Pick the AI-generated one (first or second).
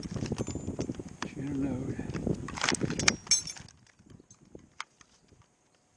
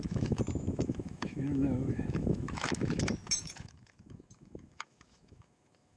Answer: second